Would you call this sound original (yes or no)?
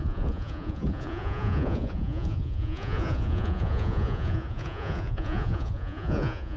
no